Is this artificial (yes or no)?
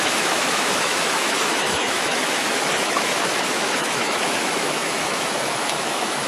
yes